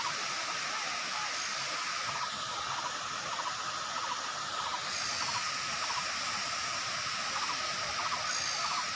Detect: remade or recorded recorded